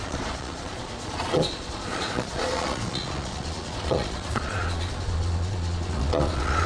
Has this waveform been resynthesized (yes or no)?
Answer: yes